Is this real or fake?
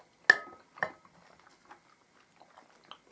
real